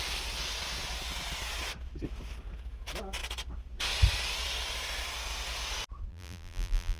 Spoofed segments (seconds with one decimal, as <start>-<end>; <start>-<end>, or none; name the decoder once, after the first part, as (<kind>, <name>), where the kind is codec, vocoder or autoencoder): 6.1-7.0 (vocoder, BigVGAN v2)